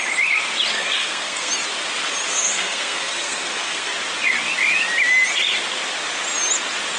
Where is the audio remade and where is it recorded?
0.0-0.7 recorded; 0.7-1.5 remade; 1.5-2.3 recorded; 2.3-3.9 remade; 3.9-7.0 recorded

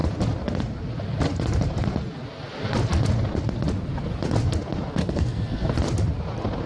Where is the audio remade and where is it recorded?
0.0-5.0 recorded; 5.0-5.7 remade; 5.7-6.7 recorded

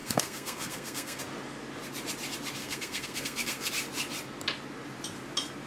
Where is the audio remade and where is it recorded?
0.0-1.2 remade; 1.2-2.6 recorded; 2.6-3.7 remade; 3.7-5.7 recorded

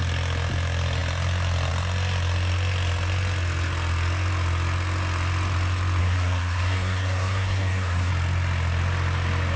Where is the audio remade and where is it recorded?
0.0-6.0 recorded; 6.0-8.1 remade; 8.1-9.6 recorded

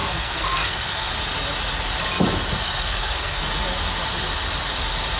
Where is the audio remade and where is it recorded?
0.0-1.1 remade; 1.1-2.6 recorded; 2.6-3.4 remade; 3.4-5.2 recorded

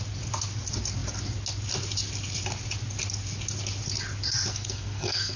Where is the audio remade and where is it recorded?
0.0-4.5 recorded; 4.5-5.4 remade

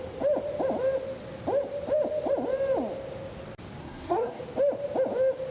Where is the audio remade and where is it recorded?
0.0-3.8 recorded; 3.8-4.4 remade; 4.4-5.5 recorded